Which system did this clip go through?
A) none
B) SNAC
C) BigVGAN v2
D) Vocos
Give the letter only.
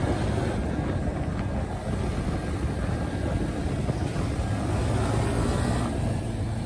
A